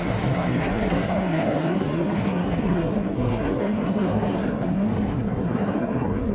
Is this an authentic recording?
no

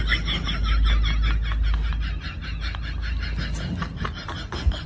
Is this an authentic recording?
yes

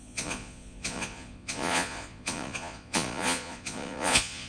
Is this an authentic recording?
no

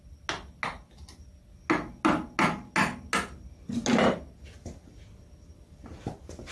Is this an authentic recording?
yes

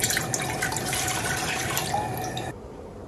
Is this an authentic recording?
yes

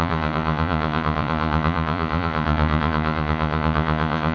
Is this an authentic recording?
no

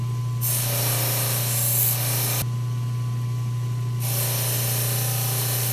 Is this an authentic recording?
yes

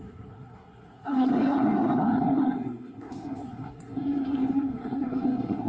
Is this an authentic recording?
no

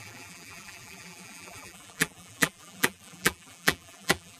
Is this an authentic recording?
no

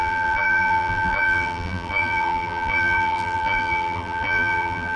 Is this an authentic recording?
no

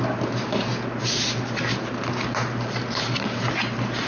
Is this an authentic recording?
yes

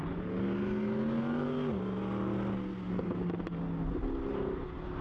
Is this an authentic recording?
yes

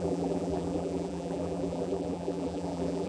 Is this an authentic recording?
no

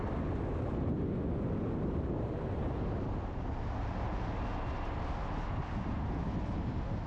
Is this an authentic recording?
yes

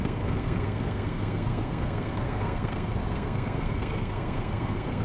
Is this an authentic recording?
no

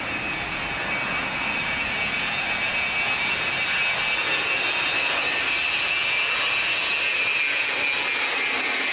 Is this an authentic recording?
yes